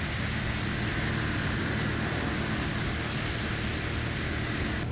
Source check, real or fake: real